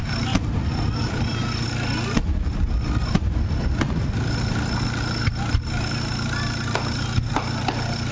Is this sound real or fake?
real